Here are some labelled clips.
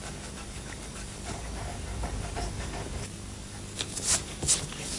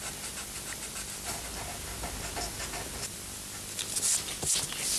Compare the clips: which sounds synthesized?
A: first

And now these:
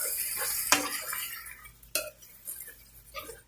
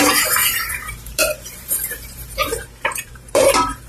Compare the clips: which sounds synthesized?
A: second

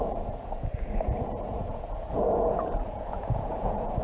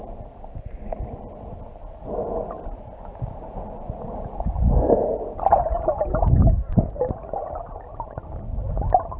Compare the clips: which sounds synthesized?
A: first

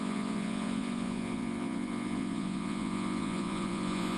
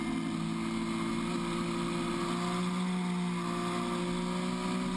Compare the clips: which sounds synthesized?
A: first